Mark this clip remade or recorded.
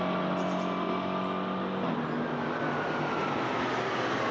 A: recorded